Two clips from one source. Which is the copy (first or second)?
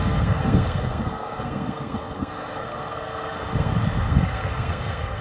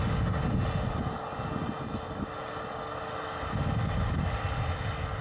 first